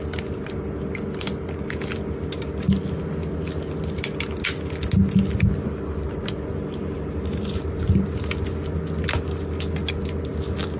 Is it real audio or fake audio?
real